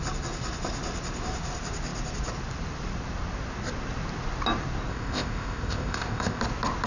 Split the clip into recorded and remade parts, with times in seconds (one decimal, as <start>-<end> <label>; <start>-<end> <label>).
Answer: 0.0-4.9 recorded; 4.9-6.4 remade; 6.4-6.9 recorded